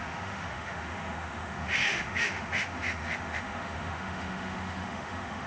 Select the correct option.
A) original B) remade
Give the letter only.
B